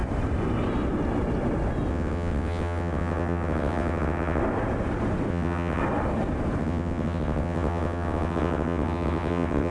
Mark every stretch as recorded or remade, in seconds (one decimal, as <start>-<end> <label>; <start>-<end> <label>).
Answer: 0.0-1.9 recorded; 1.9-4.4 remade; 4.4-5.3 recorded; 5.3-5.8 remade; 5.8-6.6 recorded; 6.6-9.7 remade